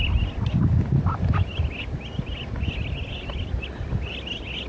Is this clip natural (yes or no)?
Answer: yes